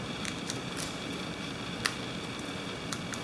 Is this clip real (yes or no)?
no